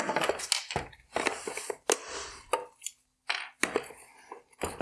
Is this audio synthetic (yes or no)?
no